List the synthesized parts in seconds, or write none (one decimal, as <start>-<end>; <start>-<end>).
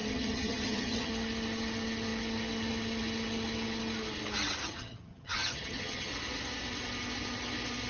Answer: 0.0-1.1; 4.6-6.1